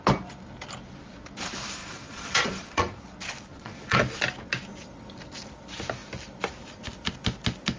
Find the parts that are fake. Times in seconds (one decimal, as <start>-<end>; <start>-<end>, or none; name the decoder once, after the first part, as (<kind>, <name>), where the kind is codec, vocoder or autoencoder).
1.8-3.0 (vocoder, Vocos); 3.5-4.0